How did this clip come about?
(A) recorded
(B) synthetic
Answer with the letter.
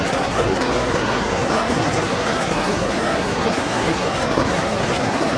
B